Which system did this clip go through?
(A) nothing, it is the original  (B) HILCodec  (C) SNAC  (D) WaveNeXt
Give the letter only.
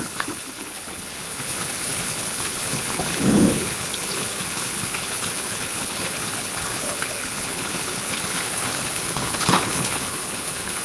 B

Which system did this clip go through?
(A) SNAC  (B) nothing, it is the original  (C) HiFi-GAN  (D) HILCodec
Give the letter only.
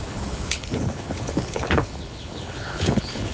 D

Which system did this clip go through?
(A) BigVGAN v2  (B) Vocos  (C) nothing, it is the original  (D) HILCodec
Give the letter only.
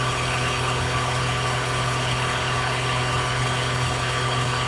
D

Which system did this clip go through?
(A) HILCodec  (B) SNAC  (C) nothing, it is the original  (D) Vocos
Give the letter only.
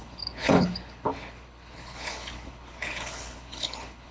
A